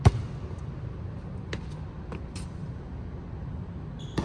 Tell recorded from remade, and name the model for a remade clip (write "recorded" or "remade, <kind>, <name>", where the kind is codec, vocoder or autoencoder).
recorded